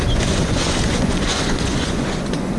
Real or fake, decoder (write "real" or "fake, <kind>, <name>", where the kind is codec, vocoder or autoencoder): fake, vocoder, Vocos